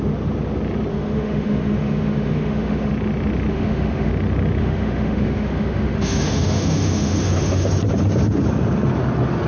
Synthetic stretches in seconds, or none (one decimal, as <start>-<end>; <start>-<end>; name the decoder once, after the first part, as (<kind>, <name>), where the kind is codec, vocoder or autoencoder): 0.9-2.9 (autoencoder, DAC-VAE); 3.5-4.1; 4.6-7.7